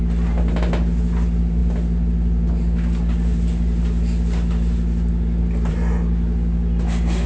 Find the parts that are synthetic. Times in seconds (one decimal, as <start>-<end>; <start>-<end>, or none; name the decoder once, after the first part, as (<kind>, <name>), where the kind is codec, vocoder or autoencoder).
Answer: none